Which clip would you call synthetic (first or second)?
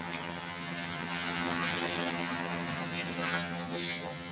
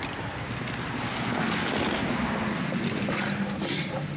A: first